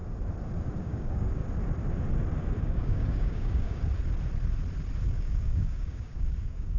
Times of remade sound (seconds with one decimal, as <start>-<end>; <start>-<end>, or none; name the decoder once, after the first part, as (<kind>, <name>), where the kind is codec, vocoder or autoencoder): 0.8-1.4 (codec, DAC); 2.6-3.9; 5.0-6.8